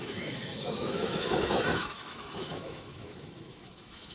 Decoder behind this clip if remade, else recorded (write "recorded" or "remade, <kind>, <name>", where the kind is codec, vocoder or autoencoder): remade, autoencoder, DAC-VAE